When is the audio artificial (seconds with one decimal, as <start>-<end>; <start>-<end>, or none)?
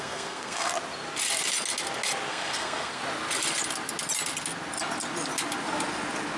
0.0-0.7; 2.3-3.0